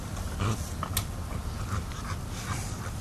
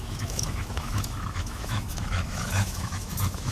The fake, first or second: second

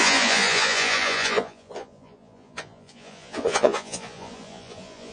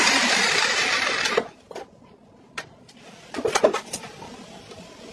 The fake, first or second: first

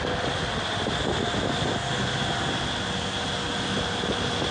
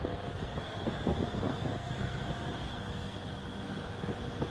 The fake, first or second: second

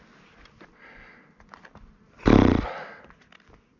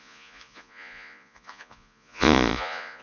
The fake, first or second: second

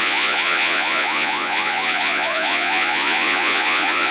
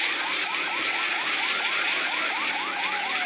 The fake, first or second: first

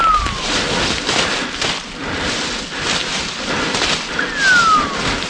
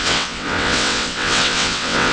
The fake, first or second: second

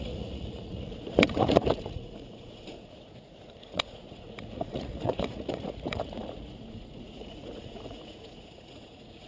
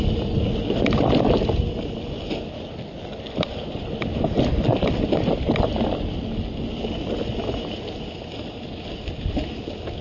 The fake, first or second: first